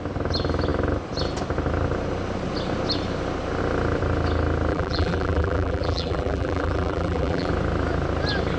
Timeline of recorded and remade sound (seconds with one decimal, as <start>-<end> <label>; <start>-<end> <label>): 0.0-4.7 recorded; 4.7-7.5 remade; 7.5-8.6 recorded